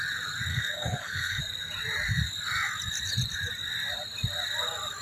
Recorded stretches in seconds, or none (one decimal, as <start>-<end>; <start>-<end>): 0.0-0.5; 1.4-5.0